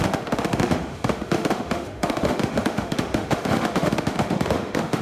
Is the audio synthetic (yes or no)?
yes